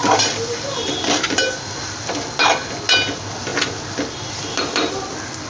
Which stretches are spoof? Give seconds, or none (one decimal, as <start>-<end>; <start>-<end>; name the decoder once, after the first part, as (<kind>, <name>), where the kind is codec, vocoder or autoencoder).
none